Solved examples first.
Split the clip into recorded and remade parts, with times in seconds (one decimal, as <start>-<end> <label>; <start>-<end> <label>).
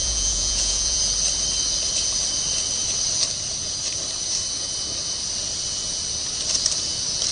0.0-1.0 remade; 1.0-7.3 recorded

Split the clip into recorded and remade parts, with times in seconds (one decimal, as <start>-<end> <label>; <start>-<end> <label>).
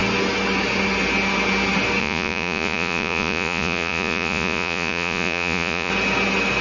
0.0-2.0 recorded; 2.0-5.9 remade; 5.9-6.6 recorded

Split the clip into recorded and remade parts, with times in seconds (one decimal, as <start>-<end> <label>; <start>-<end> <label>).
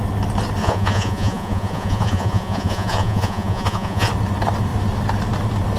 0.0-0.6 recorded; 0.6-4.1 remade; 4.1-5.8 recorded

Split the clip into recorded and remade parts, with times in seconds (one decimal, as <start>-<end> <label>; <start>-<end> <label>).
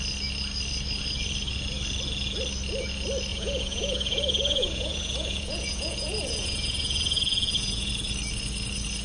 0.0-3.3 recorded; 3.3-7.9 remade; 7.9-9.0 recorded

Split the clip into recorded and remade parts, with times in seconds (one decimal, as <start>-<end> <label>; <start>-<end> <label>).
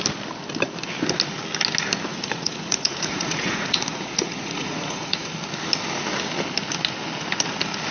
0.0-2.1 recorded; 2.1-5.3 remade; 5.3-7.9 recorded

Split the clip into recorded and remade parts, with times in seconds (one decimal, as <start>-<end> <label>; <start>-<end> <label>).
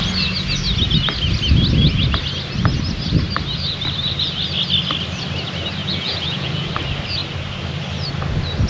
0.0-5.8 recorded; 5.8-6.7 remade; 6.7-8.7 recorded